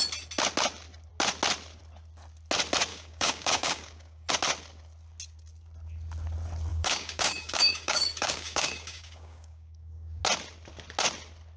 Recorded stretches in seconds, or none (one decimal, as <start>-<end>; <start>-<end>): 0.0-2.9; 4.3-6.7; 10.2-11.6